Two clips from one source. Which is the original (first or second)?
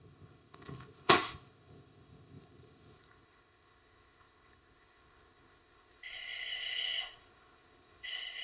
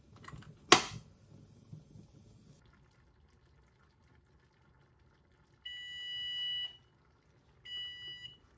second